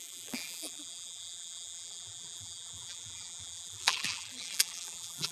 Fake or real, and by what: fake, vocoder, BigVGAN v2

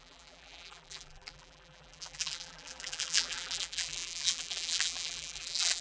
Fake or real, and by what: fake, vocoder, BigVGAN v2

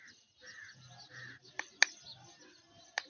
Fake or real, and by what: real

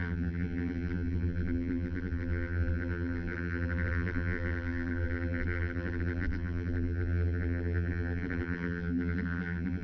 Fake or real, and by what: fake, vocoder, BigVGAN v2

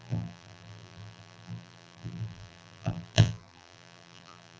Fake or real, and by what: fake, vocoder, BigVGAN v2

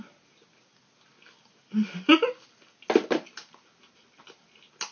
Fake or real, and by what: real